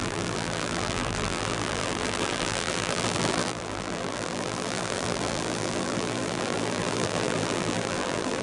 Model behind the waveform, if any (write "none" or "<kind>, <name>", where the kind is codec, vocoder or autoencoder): vocoder, BigVGAN v2